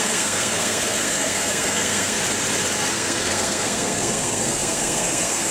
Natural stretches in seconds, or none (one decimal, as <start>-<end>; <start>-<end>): 2.2-2.9